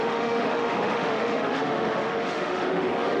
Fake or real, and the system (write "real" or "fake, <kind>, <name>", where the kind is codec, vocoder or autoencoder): fake, autoencoder, DAC-VAE